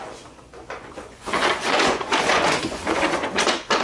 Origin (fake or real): fake